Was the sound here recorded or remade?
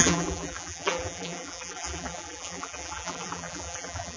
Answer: remade